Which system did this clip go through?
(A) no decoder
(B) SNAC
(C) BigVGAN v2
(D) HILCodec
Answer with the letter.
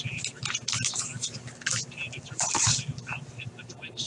C